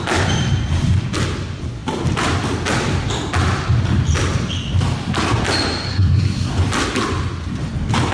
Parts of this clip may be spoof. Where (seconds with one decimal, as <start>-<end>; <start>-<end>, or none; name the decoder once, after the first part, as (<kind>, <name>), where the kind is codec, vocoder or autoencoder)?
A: 5.9-6.5 (codec, SNAC)